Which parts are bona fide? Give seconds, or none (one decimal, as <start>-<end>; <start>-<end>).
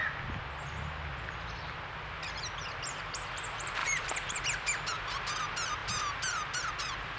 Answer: 0.0-3.8; 4.4-7.2